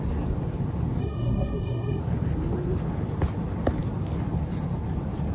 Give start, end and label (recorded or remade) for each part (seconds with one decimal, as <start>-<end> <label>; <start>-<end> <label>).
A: 0.0-1.0 recorded; 1.0-2.0 remade; 2.0-5.3 recorded